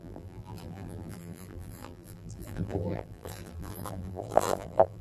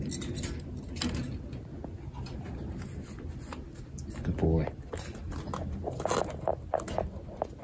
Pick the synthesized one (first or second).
first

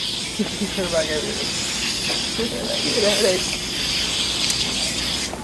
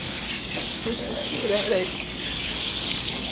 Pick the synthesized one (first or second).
second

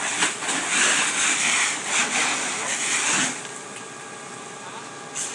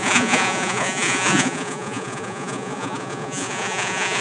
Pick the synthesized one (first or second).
second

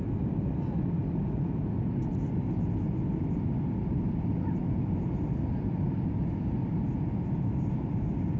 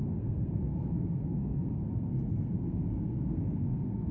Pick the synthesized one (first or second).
second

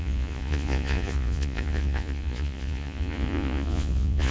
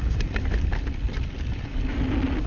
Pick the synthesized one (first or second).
first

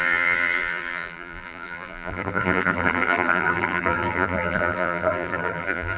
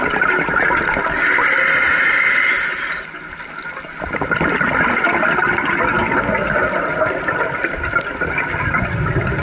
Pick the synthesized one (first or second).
first